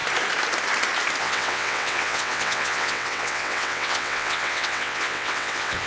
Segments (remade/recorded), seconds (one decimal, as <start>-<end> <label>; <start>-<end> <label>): 0.0-1.2 recorded; 1.2-5.9 remade